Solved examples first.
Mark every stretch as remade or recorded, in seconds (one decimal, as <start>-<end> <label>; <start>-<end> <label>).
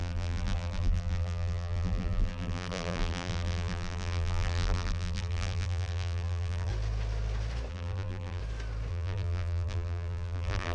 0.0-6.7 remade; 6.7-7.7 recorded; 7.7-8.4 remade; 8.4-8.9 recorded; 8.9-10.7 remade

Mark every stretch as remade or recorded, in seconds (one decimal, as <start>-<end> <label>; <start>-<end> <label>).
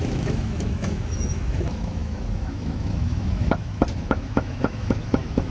0.0-5.5 remade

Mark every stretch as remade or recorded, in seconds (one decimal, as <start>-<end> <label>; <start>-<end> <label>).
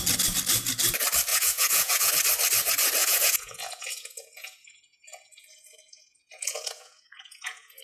0.0-1.3 recorded; 1.3-2.1 remade; 2.1-3.0 recorded; 3.0-7.8 remade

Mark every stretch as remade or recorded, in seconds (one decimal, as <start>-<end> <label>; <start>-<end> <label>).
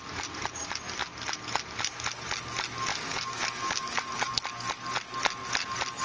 0.0-2.9 recorded; 2.9-4.3 remade; 4.3-6.0 recorded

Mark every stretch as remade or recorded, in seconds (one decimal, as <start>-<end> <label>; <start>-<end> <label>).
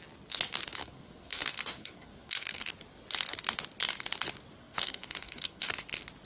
0.0-0.8 recorded; 0.8-2.7 remade; 2.7-4.6 recorded; 4.6-5.7 remade; 5.7-6.3 recorded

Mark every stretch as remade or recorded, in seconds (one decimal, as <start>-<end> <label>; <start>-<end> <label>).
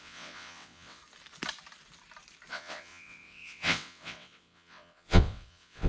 0.0-1.0 remade; 1.0-2.5 recorded; 2.5-5.9 remade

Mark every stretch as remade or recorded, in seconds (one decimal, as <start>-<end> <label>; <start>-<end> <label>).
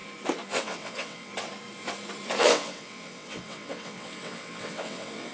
0.0-0.6 recorded; 0.6-1.3 remade; 1.3-2.4 recorded; 2.4-5.3 remade